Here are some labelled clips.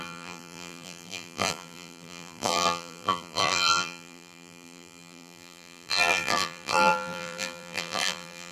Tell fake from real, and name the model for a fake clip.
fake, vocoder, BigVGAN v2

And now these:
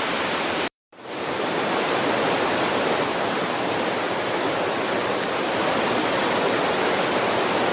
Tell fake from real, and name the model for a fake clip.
fake, vocoder, BigVGAN v2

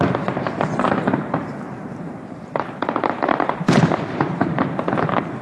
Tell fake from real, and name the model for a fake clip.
fake, vocoder, BigVGAN v2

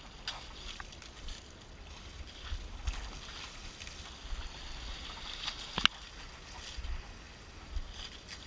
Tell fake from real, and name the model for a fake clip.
real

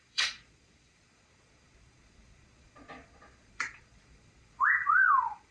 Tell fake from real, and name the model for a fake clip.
fake, vocoder, Vocos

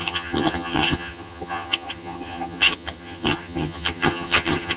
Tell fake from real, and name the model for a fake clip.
fake, vocoder, HiFi-GAN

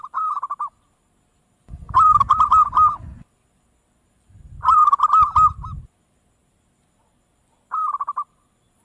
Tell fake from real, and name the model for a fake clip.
real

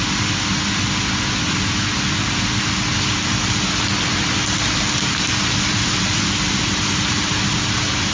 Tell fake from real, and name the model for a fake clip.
real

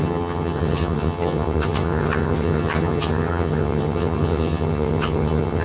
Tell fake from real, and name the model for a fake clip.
fake, vocoder, HiFi-GAN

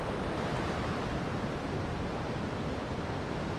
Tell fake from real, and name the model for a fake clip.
real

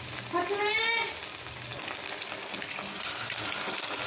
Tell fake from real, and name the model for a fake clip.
real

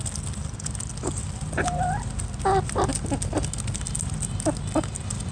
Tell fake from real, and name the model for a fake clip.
real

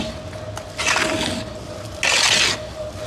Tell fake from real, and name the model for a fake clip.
real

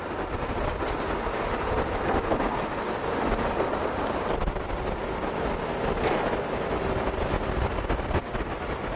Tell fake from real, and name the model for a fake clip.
real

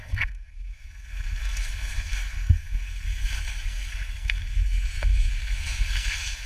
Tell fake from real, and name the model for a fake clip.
fake, codec, SNAC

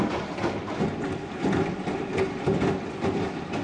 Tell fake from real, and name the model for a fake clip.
real